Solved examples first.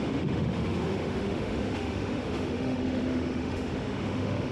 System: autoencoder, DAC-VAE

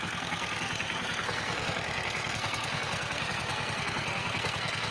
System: codec, SNAC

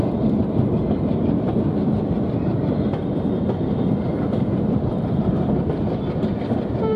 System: vocoder, BigVGAN v2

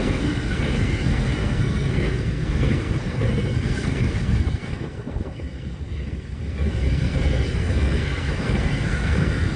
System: codec, SNAC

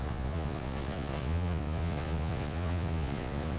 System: vocoder, Vocos